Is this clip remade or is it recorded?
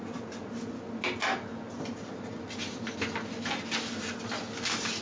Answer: recorded